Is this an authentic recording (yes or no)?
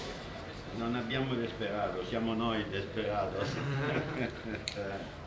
no